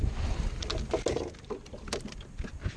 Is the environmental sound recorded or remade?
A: recorded